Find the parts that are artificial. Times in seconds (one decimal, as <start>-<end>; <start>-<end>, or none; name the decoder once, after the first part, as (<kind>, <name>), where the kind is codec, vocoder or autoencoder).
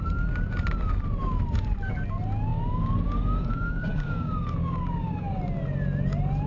2.5-5.4 (codec, DAC)